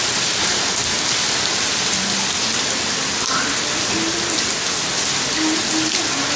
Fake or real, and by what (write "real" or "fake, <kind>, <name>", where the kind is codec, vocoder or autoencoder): real